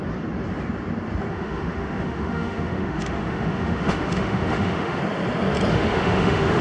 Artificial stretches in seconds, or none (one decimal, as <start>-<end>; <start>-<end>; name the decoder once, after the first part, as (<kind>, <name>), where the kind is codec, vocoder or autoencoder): 1.3-5.0 (autoencoder, DAC-VAE); 5.7-6.6

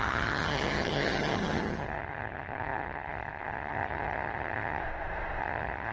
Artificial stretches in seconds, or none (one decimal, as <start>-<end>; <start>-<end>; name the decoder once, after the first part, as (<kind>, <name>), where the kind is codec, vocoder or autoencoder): 0.0-4.8 (vocoder, HiFi-GAN); 5.4-5.9

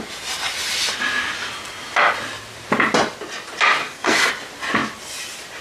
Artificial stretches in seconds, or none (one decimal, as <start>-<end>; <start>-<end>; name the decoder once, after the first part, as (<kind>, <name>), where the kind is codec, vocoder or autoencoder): 3.8-4.3 (codec, SNAC)

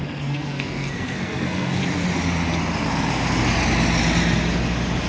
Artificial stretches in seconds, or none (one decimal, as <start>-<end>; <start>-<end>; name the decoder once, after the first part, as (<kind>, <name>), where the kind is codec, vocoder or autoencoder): 0.0-1.8 (codec, SNAC)

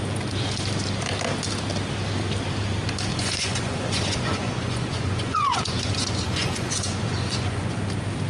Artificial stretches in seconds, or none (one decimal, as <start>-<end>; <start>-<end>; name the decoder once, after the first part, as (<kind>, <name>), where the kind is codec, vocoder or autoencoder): 3.1-7.8 (vocoder, Vocos)